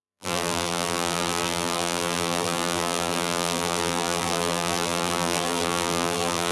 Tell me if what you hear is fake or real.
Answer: fake